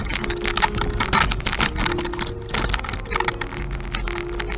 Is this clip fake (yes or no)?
no